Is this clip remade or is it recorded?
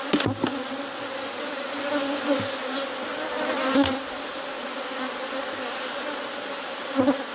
recorded